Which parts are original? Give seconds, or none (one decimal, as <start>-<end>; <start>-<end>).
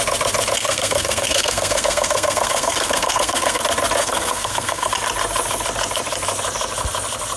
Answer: 0.0-0.6; 3.6-4.0; 4.9-7.4